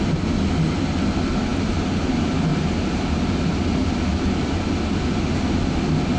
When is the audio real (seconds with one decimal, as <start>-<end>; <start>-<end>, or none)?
0.0-6.2